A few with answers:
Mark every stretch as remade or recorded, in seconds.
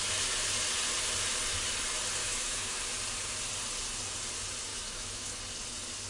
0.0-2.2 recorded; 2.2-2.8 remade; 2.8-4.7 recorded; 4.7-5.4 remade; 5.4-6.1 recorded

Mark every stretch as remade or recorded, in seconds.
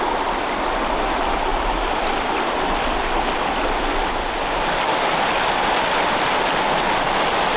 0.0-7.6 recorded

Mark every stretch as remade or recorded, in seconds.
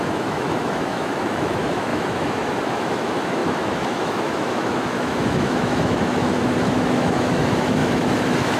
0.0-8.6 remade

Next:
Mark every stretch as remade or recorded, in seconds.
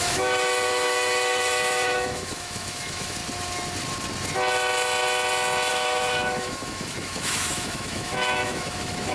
0.0-3.2 remade; 3.2-5.7 recorded; 5.7-9.1 remade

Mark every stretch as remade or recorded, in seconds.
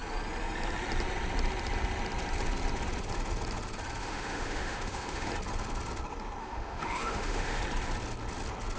0.0-4.0 recorded; 4.0-5.3 remade; 5.3-6.4 recorded; 6.4-7.6 remade; 7.6-8.8 recorded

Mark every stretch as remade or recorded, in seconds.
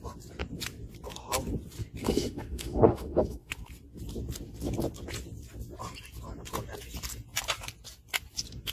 0.0-2.0 recorded; 2.0-3.5 remade; 3.5-8.7 recorded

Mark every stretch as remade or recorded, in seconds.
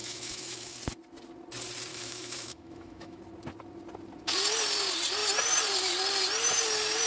0.0-0.8 remade; 0.8-1.9 recorded; 1.9-3.2 remade; 3.2-7.1 recorded